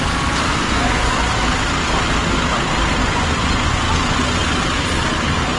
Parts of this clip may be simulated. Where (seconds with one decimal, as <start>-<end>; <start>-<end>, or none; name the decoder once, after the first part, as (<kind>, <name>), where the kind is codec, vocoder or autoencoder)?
0.5-1.4 (vocoder, Vocos); 3.0-4.4